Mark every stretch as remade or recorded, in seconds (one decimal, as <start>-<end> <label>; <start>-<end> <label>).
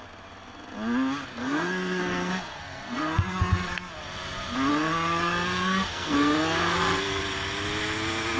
0.0-1.3 recorded; 1.3-3.9 remade; 3.9-4.7 recorded; 4.7-7.2 remade; 7.2-8.4 recorded